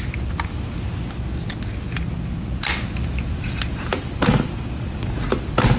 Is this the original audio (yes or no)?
yes